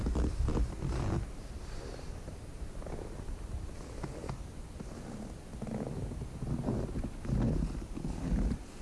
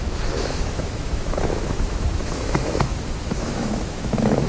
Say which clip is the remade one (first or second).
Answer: second